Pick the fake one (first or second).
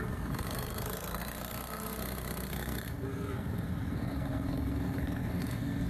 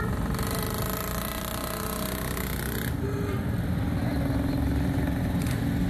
first